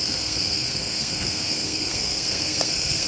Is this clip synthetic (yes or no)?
yes